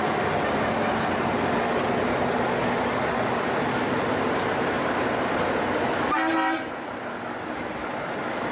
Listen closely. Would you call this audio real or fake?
real